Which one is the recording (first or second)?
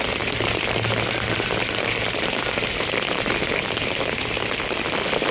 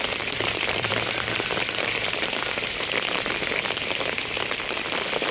first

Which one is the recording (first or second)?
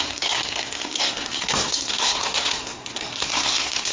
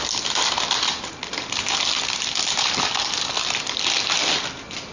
second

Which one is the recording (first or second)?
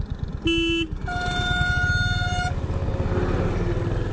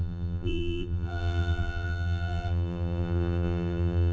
first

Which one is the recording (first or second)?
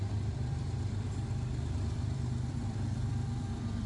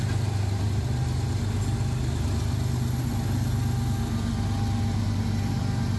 second